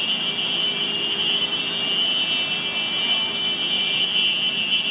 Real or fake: real